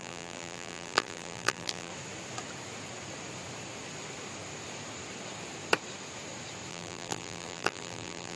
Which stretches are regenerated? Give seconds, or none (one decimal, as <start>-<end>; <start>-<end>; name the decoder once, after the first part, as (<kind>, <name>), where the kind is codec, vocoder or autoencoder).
0.0-1.9 (vocoder, BigVGAN v2); 6.7-8.4